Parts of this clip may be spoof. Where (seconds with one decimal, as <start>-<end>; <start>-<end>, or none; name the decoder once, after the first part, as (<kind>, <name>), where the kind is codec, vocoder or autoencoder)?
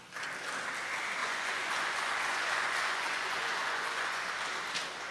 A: 1.2-4.3 (vocoder, Vocos)